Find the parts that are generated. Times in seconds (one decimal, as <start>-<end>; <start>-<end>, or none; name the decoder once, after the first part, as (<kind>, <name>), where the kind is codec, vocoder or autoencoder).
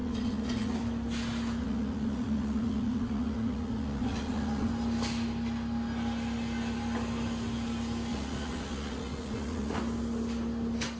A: 0.0-0.8 (vocoder, Vocos); 1.6-4.7; 8.1-9.8